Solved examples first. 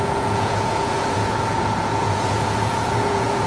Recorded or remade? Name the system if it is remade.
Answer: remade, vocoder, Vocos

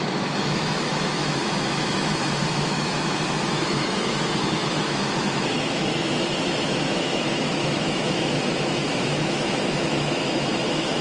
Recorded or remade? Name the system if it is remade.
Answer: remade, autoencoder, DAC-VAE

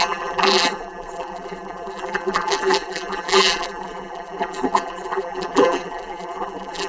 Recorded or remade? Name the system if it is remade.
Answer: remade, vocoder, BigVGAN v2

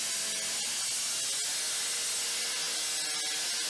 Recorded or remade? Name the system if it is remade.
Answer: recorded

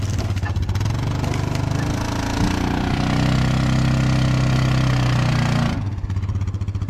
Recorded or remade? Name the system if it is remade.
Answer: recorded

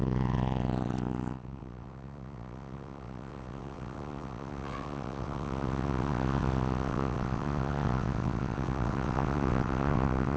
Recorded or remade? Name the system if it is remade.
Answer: remade, vocoder, WaveNeXt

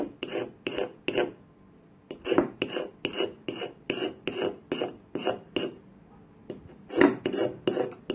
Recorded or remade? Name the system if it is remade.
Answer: recorded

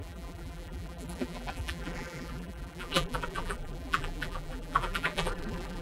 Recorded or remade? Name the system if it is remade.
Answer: remade, vocoder, BigVGAN v2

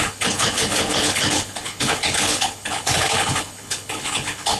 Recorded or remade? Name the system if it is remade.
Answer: remade, codec, HILCodec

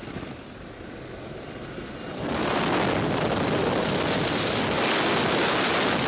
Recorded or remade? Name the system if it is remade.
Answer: recorded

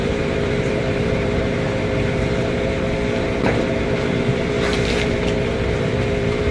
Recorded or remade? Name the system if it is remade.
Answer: remade, vocoder, BigVGAN v2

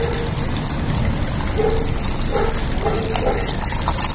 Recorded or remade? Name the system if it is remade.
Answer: recorded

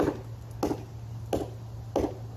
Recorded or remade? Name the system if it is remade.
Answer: recorded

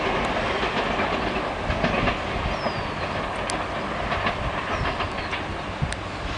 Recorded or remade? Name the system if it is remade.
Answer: recorded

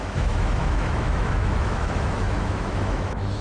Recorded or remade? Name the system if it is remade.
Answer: remade, autoencoder, DAC-VAE